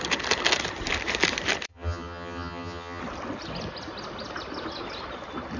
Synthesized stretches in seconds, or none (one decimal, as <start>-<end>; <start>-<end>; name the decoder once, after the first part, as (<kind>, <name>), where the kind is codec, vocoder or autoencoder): 1.7-3.0 (vocoder, HiFi-GAN)